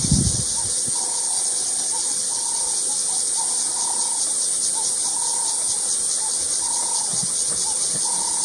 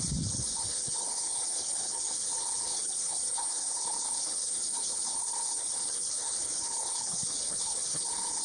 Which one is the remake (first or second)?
second